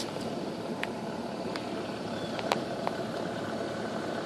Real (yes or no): no